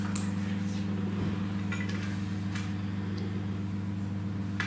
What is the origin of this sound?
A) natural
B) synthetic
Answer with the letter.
A